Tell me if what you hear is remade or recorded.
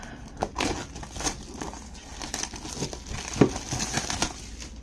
recorded